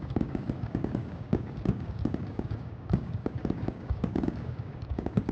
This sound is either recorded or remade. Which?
remade